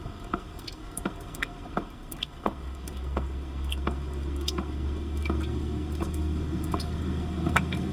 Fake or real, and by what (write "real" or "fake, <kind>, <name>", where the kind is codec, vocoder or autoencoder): fake, codec, SNAC